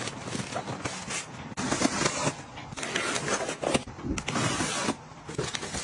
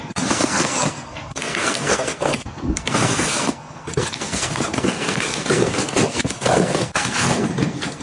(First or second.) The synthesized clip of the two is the second